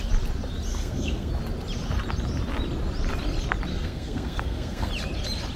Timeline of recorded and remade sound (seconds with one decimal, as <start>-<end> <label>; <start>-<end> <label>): 0.0-0.7 recorded; 0.7-1.3 remade; 1.3-3.7 recorded; 3.7-4.9 remade; 4.9-5.6 recorded